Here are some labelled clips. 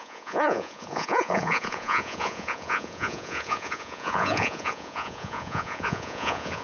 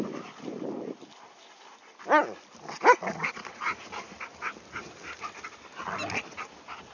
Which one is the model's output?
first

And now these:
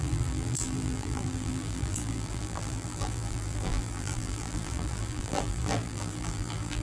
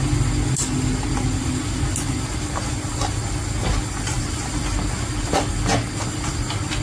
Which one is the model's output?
first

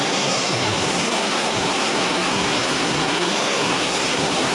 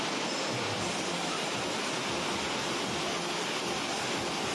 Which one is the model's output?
first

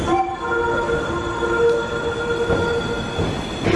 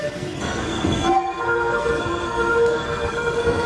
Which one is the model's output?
second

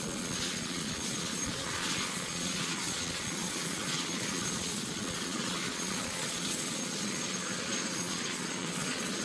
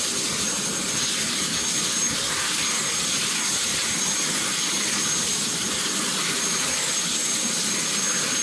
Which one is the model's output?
first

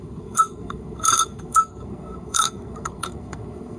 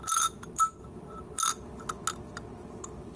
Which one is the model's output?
first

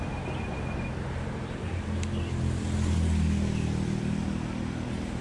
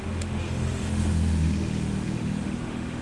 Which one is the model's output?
second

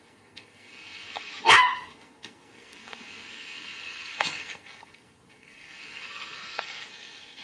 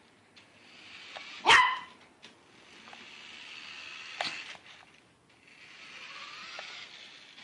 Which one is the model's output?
first